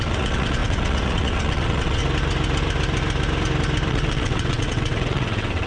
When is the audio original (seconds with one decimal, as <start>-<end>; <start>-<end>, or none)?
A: 2.0-3.9